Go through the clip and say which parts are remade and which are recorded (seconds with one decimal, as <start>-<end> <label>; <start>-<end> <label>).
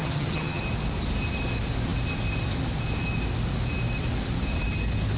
0.0-0.6 remade; 0.6-5.2 recorded